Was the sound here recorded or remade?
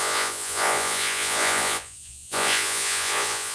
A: remade